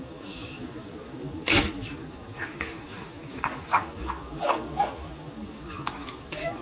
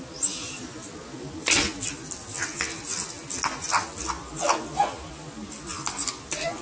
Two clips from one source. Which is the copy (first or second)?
first